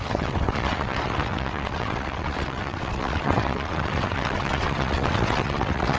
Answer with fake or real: fake